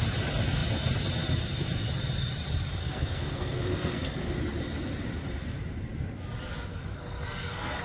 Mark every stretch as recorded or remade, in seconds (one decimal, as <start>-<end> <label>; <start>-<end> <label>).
0.0-2.8 recorded; 2.8-4.2 remade; 4.2-6.7 recorded; 6.7-7.8 remade